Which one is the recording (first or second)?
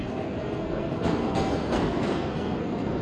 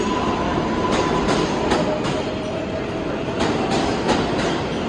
second